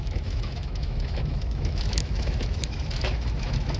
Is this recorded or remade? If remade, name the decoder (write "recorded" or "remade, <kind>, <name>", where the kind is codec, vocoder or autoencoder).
remade, autoencoder, DAC-VAE